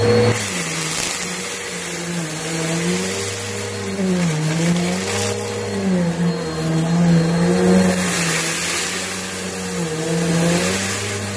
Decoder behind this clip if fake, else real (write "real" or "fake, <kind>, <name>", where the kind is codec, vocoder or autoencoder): real